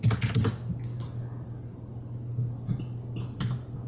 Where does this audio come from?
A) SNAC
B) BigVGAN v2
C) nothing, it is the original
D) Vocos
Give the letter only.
C